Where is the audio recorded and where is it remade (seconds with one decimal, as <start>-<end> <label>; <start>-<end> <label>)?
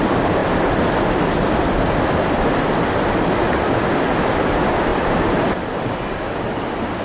0.0-0.4 recorded; 0.4-3.1 remade; 3.1-4.9 recorded; 4.9-7.0 remade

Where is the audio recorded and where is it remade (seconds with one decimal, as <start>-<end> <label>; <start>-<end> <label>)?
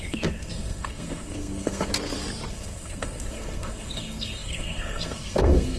0.0-1.9 remade; 1.9-2.5 recorded; 2.5-5.8 remade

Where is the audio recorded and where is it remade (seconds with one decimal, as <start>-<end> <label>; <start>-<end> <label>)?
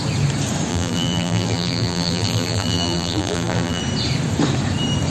0.0-0.7 recorded; 0.7-3.8 remade; 3.8-5.1 recorded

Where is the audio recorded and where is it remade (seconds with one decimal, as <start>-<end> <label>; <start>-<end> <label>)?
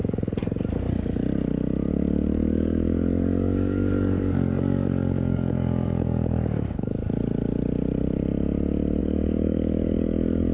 0.0-0.4 remade; 0.4-1.9 recorded; 1.9-7.0 remade; 7.0-9.0 recorded; 9.0-10.5 remade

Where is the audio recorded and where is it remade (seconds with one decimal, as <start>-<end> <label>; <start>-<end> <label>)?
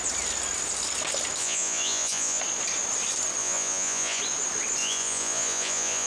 0.0-1.4 recorded; 1.4-2.4 remade; 2.4-3.4 recorded; 3.4-4.2 remade; 4.2-4.8 recorded; 4.8-6.1 remade